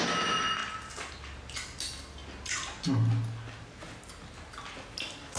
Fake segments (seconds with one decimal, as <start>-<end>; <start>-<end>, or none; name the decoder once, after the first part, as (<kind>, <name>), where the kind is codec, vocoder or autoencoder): none